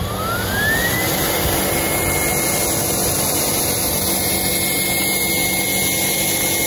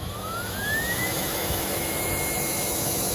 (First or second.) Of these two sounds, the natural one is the first